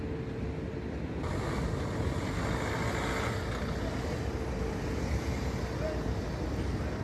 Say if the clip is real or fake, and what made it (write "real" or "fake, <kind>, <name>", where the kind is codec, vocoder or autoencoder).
real